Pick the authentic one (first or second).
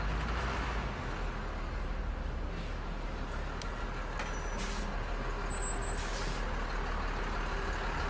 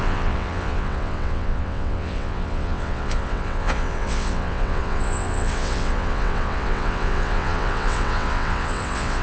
first